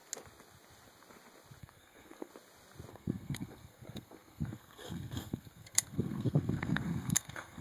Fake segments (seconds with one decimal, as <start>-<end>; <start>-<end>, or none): 1.6-2.3; 2.9-7.6